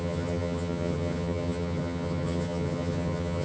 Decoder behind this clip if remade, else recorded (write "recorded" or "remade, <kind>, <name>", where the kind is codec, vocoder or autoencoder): remade, vocoder, HiFi-GAN